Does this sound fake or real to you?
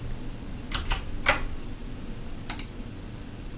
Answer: real